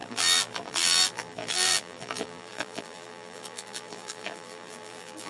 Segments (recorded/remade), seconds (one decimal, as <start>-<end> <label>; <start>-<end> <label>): 0.0-5.3 remade